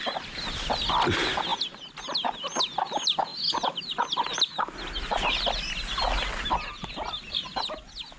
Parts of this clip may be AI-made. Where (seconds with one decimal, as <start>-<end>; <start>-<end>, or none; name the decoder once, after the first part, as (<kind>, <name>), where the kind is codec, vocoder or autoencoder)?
none